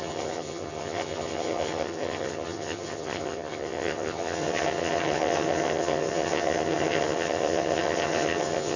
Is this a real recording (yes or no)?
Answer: no